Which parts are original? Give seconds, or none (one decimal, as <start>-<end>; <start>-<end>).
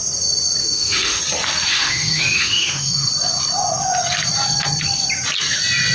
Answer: 0.0-0.6; 1.2-1.7; 3.1-5.9